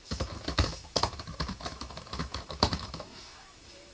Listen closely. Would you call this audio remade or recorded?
remade